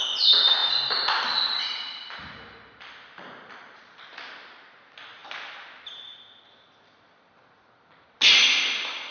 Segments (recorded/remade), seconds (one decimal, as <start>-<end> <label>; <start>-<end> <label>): 0.0-9.1 recorded